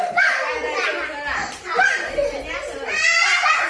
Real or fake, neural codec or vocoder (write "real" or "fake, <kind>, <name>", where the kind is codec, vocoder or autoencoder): real